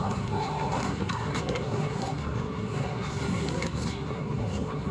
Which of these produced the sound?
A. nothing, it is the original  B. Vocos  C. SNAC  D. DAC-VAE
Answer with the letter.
C